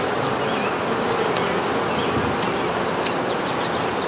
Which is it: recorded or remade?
recorded